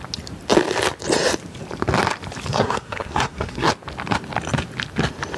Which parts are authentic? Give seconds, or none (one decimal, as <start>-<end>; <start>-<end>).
0.0-2.5; 3.7-5.4